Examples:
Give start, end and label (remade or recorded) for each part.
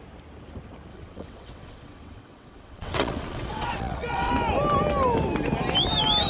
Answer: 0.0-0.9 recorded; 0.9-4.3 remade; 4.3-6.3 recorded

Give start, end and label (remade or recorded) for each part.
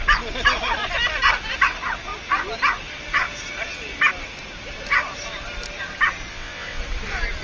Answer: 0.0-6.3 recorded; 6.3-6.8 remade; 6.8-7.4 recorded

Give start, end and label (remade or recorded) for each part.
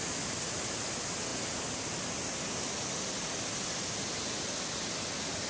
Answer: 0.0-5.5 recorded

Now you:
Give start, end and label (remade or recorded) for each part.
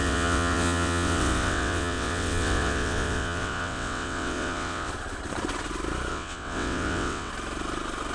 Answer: 0.0-4.9 remade; 4.9-6.1 recorded; 6.1-7.3 remade; 7.3-8.1 recorded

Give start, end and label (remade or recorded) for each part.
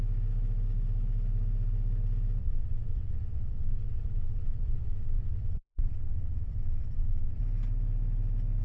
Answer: 0.0-2.4 recorded; 2.4-7.4 remade; 7.4-8.6 recorded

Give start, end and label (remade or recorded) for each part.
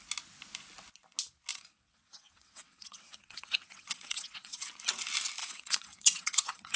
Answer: 0.0-1.5 recorded; 1.5-4.7 remade; 4.7-5.4 recorded; 5.4-6.8 remade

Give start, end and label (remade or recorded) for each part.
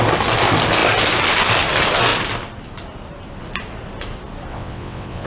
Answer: 0.0-4.5 recorded; 4.5-5.3 remade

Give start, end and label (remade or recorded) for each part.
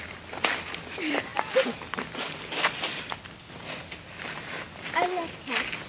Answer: 0.0-5.9 recorded